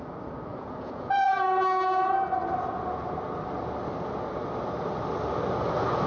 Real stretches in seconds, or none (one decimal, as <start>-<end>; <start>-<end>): 0.0-0.5; 2.1-6.1